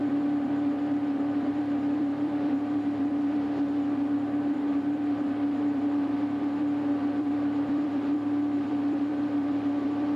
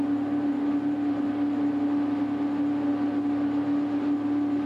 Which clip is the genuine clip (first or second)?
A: second